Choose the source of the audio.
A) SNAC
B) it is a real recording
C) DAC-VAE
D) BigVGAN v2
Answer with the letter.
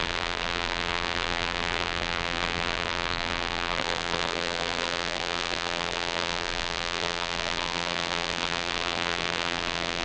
D